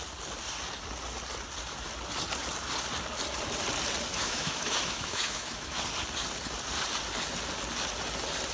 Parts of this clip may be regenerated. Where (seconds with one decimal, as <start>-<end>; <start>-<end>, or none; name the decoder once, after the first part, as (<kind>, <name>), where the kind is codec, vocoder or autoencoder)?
4.1-5.8 (autoencoder, DAC-VAE)